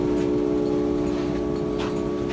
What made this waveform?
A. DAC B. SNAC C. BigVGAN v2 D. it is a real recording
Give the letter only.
D